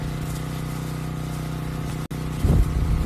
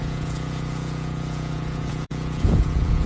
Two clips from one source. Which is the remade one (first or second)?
second